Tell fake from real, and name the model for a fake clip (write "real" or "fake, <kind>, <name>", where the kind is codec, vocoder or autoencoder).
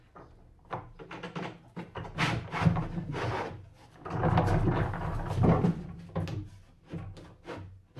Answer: real